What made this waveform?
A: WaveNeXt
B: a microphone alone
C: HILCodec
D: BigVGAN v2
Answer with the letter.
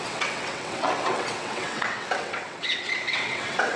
A